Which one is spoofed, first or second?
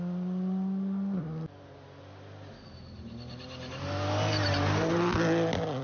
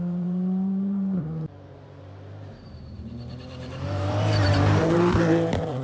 second